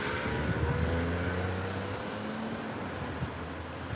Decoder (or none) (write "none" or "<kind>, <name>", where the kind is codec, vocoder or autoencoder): none